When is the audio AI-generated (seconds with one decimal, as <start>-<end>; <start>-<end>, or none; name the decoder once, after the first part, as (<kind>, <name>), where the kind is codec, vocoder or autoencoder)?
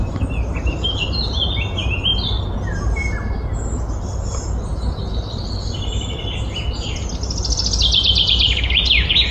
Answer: none